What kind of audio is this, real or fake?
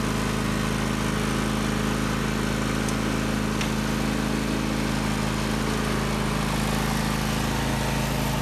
real